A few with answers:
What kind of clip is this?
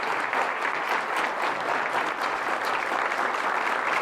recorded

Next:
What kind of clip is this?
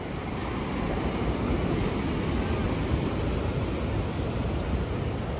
recorded